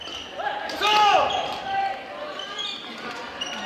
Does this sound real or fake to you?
real